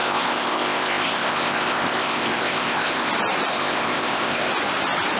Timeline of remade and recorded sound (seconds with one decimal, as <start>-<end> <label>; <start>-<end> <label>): 0.0-3.1 remade; 3.1-3.5 recorded; 3.5-4.5 remade; 4.5-5.2 recorded